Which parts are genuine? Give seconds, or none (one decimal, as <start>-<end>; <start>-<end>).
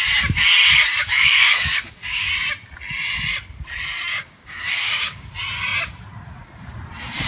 0.0-1.0; 2.3-4.1; 5.3-7.3